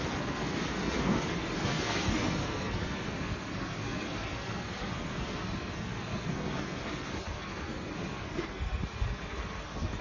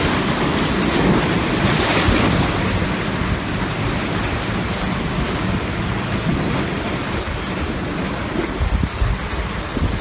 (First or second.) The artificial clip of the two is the first